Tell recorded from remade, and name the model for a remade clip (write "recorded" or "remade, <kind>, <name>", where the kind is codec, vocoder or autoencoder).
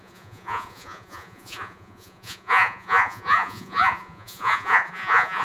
remade, vocoder, Vocos